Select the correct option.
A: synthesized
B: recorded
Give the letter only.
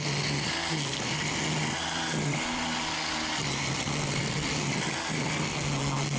B